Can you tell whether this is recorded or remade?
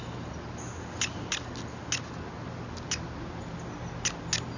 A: recorded